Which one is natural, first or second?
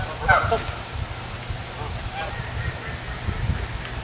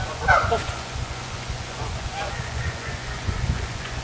first